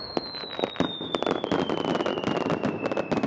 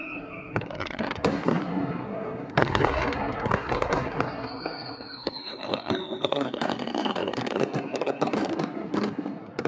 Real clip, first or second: first